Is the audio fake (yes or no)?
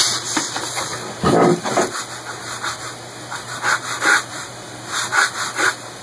no